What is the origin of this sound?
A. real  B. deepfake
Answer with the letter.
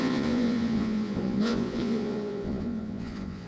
B